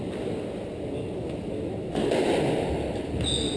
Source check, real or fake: real